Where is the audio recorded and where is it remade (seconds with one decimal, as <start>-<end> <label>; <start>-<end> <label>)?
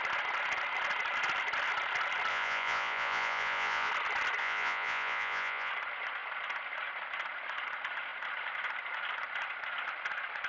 0.0-2.3 recorded; 2.3-3.9 remade; 3.9-4.4 recorded; 4.4-5.7 remade; 5.7-10.5 recorded